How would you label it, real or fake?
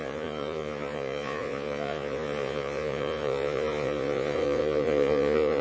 fake